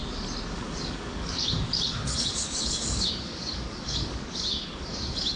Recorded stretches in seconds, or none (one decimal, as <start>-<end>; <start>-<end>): 0.0-0.5